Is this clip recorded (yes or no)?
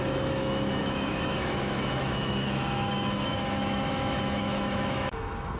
no